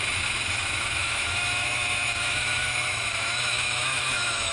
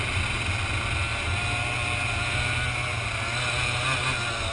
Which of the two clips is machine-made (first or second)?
first